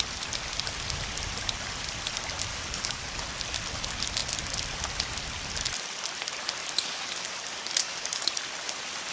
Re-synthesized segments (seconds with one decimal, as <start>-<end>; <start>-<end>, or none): 2.5-3.1; 6.6-8.3